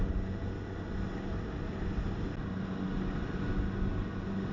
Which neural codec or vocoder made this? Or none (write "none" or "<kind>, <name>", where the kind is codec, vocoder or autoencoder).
none